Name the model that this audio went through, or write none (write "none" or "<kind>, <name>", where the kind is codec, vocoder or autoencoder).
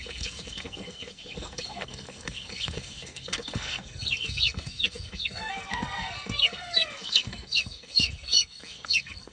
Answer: codec, SNAC